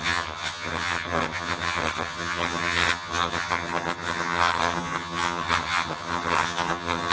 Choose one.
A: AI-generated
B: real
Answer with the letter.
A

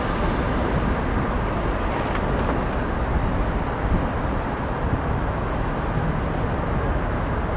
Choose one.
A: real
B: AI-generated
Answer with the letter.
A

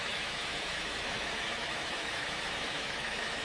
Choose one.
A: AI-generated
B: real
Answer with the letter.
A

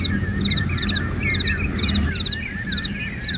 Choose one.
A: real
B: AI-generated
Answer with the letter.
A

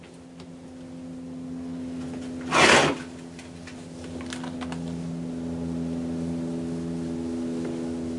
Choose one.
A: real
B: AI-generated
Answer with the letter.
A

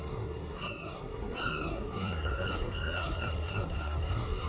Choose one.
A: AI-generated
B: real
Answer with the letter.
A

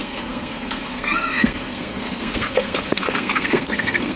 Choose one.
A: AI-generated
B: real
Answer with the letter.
A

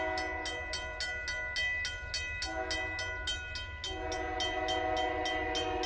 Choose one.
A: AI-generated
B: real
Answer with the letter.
B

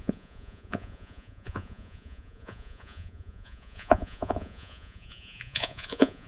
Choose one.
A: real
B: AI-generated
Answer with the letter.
B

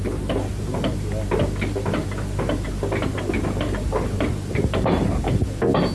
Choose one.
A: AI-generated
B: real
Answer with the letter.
B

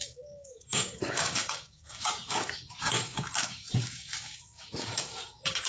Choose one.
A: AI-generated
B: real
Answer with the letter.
A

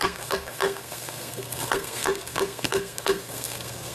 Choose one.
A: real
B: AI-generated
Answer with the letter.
B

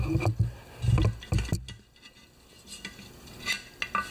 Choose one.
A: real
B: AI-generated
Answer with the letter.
A